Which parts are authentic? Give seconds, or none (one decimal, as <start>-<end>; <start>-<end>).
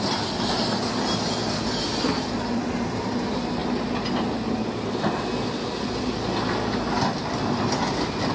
0.0-8.3